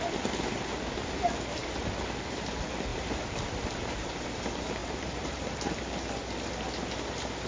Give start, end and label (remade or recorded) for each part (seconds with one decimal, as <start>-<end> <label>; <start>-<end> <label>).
0.0-2.9 recorded; 2.9-4.1 remade; 4.1-4.8 recorded; 4.8-5.7 remade; 5.7-7.5 recorded